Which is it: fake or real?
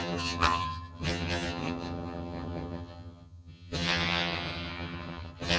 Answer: fake